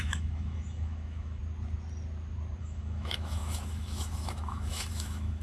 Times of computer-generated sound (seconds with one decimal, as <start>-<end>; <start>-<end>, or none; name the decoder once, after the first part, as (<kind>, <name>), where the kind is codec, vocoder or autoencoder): 0.0-1.4 (autoencoder, DAC-VAE); 2.6-5.4